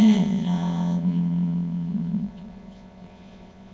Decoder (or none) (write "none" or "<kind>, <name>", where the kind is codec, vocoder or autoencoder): vocoder, Vocos